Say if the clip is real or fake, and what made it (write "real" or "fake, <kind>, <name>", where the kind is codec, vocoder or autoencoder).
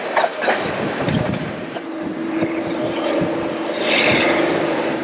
fake, vocoder, BigVGAN v2